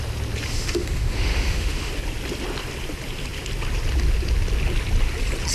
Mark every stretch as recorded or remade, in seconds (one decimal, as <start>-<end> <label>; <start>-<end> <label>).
0.0-0.5 recorded; 0.5-1.9 remade; 1.9-5.5 recorded